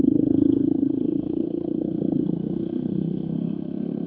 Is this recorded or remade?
remade